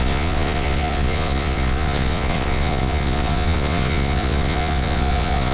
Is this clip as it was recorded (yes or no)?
no